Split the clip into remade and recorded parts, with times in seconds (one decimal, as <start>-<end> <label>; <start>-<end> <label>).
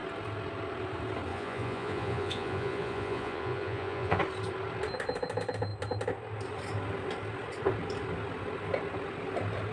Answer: 0.0-1.3 recorded; 1.3-4.2 remade; 4.2-9.7 recorded